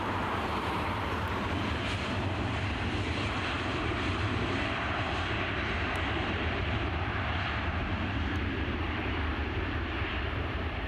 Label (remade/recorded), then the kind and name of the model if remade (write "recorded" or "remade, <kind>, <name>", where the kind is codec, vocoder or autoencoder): remade, vocoder, BigVGAN v2